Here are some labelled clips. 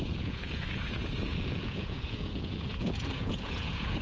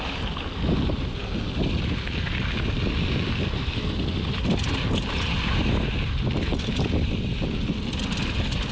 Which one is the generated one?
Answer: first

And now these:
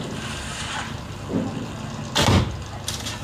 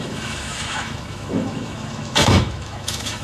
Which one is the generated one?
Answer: second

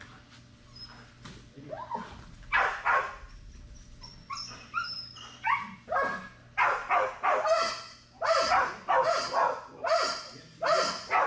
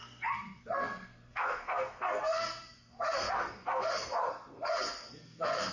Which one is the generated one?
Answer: second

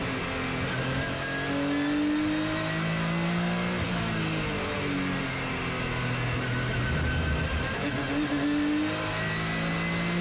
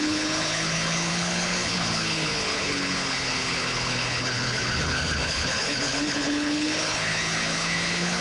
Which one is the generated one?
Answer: second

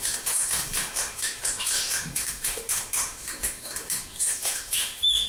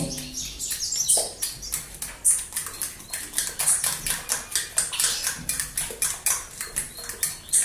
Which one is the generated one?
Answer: first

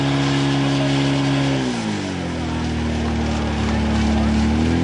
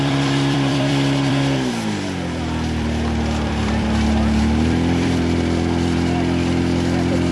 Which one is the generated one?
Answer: second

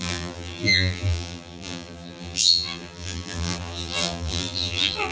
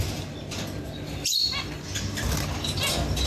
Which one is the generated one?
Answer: first